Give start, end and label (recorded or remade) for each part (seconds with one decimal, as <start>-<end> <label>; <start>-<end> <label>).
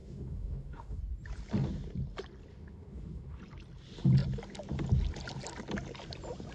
0.0-1.0 remade; 1.0-2.5 recorded; 2.5-3.4 remade; 3.4-6.5 recorded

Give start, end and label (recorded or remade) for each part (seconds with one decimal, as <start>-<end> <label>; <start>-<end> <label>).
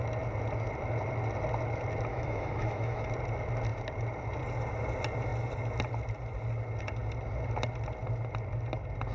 0.0-2.1 recorded; 2.1-3.1 remade; 3.1-9.1 recorded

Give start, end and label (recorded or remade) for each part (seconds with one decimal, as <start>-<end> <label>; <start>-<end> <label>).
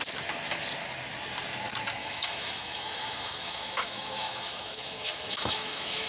0.0-2.0 recorded; 2.0-6.1 remade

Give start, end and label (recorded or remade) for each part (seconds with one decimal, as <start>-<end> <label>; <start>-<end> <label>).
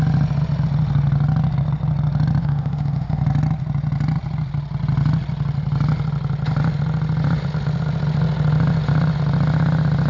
0.0-2.4 recorded; 2.4-3.2 remade; 3.2-10.1 recorded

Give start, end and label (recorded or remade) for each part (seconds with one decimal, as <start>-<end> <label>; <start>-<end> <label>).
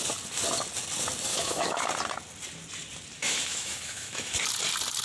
0.0-1.3 recorded; 1.3-1.9 remade; 1.9-3.2 recorded; 3.2-4.4 remade; 4.4-5.0 recorded